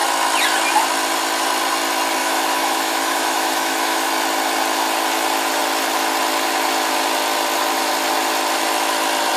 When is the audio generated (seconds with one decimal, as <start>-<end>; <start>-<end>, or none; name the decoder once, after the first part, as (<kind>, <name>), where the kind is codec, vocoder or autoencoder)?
2.2-4.1 (autoencoder, DAC-VAE)